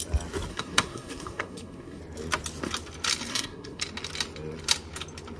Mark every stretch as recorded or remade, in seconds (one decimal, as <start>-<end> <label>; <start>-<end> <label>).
0.0-0.5 recorded; 0.5-2.0 remade; 2.0-3.3 recorded; 3.3-3.8 remade; 3.8-5.4 recorded